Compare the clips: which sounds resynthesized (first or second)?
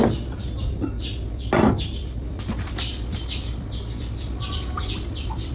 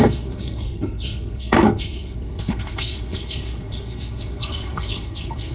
second